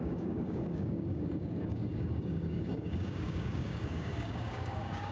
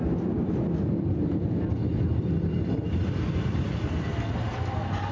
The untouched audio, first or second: second